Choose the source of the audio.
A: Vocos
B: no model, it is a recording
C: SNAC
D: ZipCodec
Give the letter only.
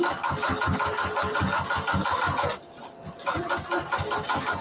B